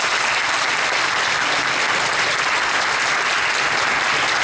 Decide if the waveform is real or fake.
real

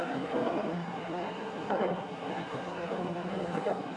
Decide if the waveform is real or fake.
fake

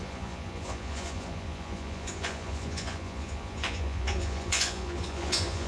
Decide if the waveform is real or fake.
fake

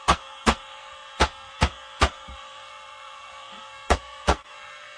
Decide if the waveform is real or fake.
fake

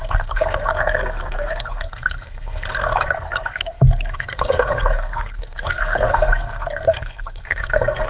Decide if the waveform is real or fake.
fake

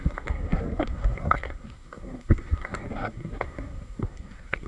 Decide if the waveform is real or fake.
fake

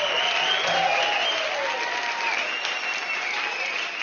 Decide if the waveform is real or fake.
real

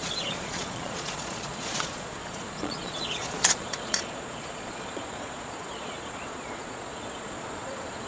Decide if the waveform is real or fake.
fake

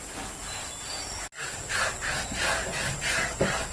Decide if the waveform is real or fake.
real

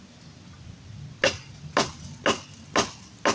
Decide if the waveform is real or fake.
real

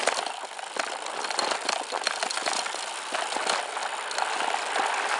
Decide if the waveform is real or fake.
real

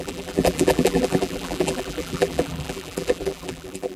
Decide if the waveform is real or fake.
fake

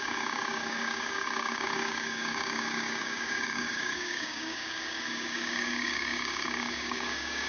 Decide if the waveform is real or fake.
fake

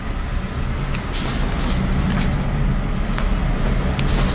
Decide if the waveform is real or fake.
real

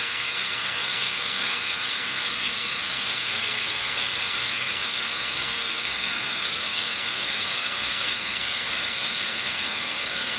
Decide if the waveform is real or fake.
fake